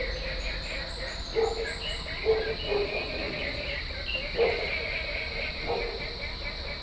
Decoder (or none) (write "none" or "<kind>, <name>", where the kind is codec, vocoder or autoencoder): none